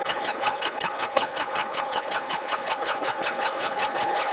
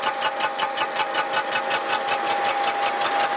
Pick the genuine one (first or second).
second